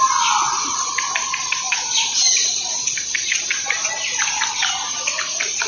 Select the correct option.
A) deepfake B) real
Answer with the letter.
B